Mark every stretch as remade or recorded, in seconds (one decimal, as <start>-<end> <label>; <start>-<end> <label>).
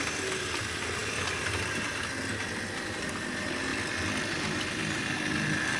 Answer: 0.0-5.8 recorded